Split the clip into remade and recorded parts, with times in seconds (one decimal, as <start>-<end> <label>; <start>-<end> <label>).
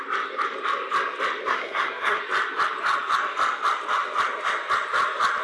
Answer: 0.0-1.5 recorded; 1.5-2.2 remade; 2.2-5.4 recorded